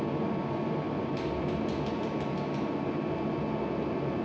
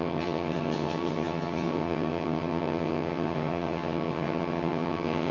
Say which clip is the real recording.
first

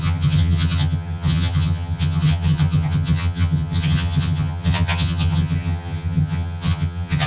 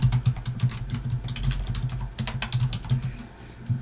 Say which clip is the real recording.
second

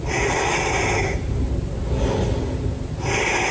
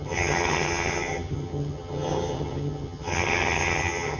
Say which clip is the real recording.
first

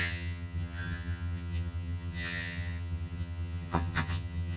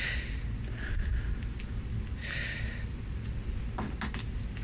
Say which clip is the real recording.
second